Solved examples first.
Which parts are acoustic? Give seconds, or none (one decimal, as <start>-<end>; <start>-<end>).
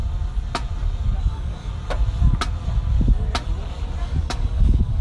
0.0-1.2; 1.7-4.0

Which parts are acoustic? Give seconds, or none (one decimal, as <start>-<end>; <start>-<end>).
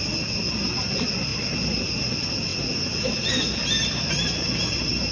0.0-5.1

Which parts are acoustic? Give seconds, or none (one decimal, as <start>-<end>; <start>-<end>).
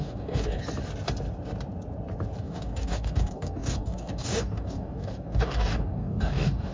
0.6-2.4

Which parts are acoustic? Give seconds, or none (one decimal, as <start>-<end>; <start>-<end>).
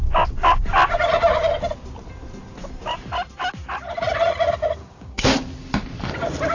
0.0-4.8; 5.4-6.5